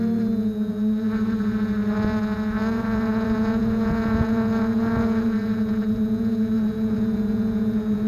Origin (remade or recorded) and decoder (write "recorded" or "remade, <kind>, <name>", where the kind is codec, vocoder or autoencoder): remade, vocoder, Vocos